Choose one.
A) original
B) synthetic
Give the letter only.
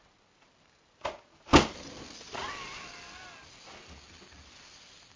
A